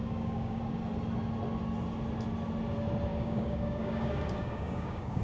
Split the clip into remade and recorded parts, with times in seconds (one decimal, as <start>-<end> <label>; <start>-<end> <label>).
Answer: 0.0-0.6 remade; 0.6-3.1 recorded; 3.1-5.2 remade